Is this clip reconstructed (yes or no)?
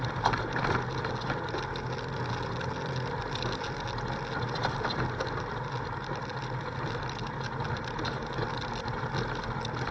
no